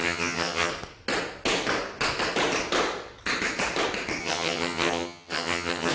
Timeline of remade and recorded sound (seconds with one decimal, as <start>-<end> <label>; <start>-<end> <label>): 0.0-0.7 remade; 0.7-4.2 recorded; 4.2-5.9 remade